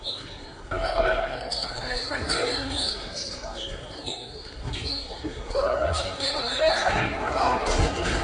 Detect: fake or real fake